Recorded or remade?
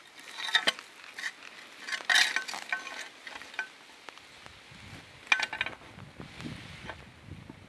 recorded